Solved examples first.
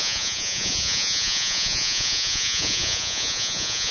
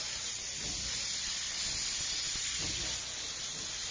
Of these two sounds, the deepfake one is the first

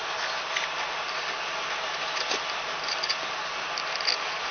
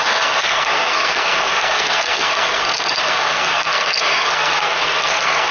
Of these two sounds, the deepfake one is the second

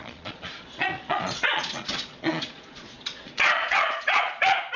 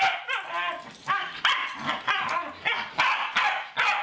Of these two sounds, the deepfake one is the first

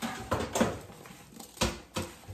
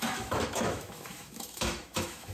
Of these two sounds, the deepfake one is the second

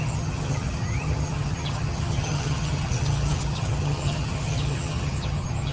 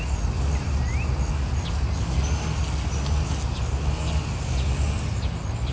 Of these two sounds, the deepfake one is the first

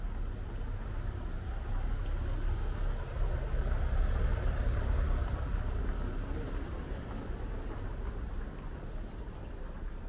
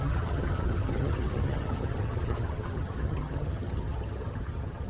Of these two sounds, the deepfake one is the second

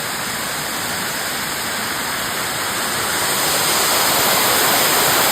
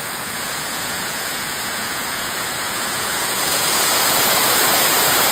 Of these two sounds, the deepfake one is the second